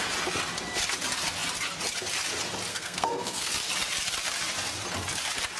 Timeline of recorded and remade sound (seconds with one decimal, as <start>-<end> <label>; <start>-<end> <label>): 0.0-2.7 recorded; 2.7-3.5 remade; 3.5-5.6 recorded